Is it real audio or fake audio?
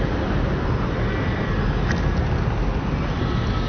real